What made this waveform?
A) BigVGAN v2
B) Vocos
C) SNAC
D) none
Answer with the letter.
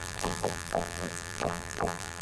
A